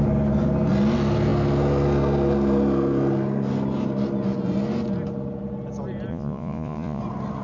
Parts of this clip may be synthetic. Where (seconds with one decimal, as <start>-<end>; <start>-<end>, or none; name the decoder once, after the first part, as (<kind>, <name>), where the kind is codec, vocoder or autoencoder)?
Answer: 6.1-7.0 (vocoder, Vocos)

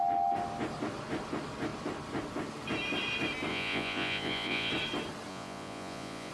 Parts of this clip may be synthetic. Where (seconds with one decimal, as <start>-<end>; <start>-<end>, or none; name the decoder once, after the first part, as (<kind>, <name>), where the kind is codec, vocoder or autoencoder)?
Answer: 3.5-4.7 (vocoder, Vocos); 5.3-6.3

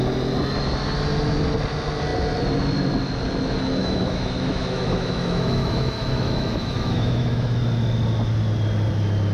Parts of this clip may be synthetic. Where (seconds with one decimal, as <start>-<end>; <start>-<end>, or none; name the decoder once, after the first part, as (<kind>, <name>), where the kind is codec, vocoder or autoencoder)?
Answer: 3.8-7.6 (autoencoder, DAC-VAE)

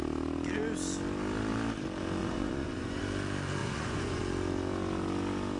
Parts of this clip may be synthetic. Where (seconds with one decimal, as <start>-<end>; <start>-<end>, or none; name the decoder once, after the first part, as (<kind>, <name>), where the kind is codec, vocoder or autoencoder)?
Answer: 2.2-3.0 (vocoder, Vocos); 3.6-4.2

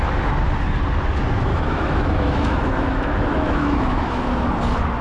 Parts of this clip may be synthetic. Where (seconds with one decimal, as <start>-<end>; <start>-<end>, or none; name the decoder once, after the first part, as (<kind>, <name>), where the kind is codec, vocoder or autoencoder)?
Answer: 1.5-4.5 (autoencoder, DAC-VAE)

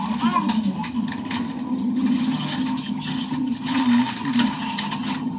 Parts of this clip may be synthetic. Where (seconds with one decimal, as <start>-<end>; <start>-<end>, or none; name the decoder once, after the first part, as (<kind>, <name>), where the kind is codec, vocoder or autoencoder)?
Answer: 1.7-3.8 (vocoder, HiFi-GAN); 4.4-5.4